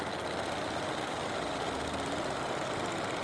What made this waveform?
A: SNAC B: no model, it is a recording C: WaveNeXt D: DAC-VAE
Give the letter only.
B